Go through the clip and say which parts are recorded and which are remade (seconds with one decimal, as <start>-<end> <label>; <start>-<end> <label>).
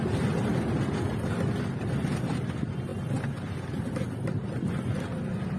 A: 0.0-5.6 recorded